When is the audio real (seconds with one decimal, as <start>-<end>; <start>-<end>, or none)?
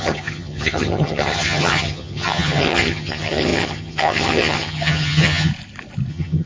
5.5-6.1